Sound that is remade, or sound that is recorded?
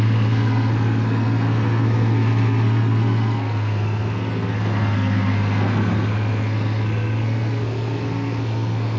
remade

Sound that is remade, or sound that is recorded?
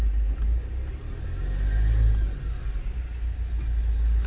recorded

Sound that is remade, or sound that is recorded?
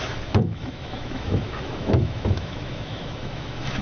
remade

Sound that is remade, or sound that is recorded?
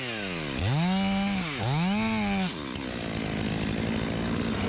recorded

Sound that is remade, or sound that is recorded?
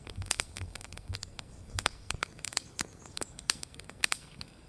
remade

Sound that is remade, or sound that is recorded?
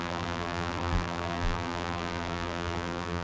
remade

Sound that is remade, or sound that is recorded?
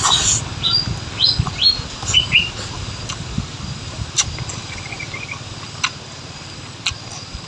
recorded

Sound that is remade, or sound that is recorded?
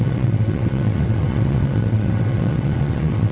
remade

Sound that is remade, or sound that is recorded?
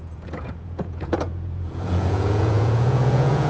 remade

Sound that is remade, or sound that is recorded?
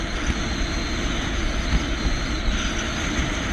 recorded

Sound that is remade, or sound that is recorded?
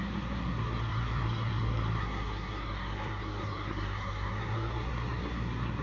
remade